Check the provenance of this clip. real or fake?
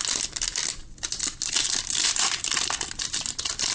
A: real